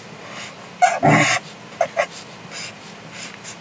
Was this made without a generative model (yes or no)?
yes